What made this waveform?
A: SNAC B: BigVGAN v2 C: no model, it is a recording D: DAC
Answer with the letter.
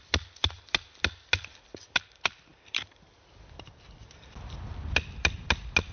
C